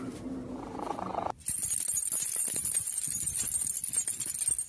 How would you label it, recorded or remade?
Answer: recorded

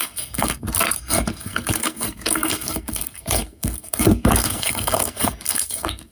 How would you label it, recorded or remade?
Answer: remade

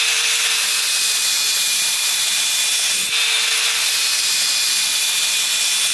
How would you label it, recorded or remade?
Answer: remade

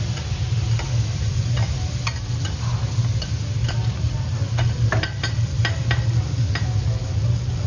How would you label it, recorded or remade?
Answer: recorded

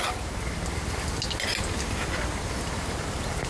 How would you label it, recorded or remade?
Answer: recorded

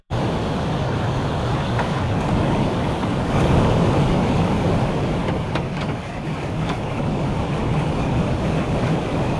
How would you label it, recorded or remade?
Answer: remade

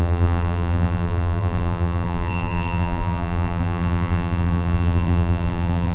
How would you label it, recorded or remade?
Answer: remade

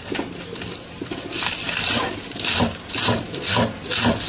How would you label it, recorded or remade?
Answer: recorded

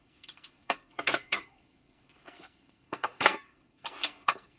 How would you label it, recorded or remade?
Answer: remade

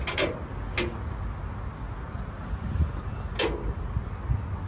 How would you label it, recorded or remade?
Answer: recorded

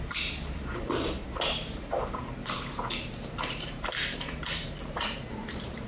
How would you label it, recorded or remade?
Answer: remade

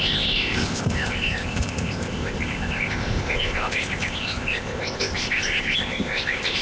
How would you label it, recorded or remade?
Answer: remade